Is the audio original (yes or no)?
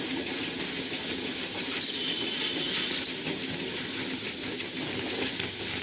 yes